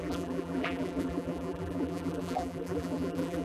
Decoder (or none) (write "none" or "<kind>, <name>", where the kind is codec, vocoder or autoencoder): vocoder, BigVGAN v2